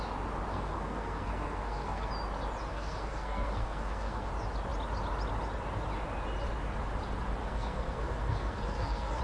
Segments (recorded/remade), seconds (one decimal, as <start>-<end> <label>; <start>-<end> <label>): 0.0-0.5 recorded; 0.5-2.1 remade; 2.1-2.7 recorded; 2.7-4.3 remade; 4.3-7.4 recorded; 7.4-9.2 remade